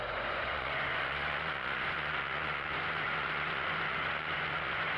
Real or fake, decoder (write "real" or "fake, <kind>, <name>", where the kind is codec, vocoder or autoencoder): fake, vocoder, Vocos